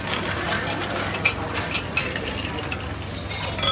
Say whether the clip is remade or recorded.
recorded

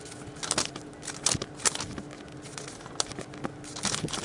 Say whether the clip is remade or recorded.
recorded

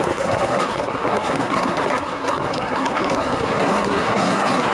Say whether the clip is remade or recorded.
remade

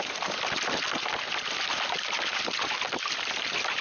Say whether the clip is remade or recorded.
recorded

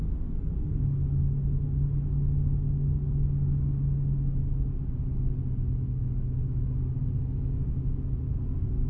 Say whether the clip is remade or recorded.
recorded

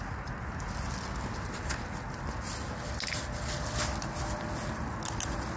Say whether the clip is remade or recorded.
recorded